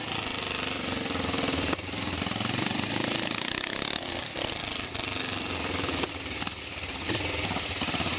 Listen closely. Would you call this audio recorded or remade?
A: remade